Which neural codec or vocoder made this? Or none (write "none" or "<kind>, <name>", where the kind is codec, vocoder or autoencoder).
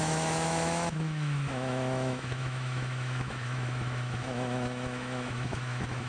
autoencoder, DAC-VAE